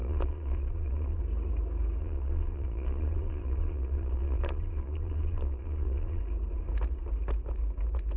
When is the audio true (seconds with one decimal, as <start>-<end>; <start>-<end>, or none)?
1.2-2.0; 6.2-8.2